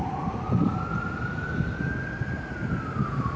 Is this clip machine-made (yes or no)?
no